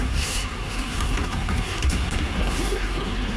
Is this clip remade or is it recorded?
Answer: remade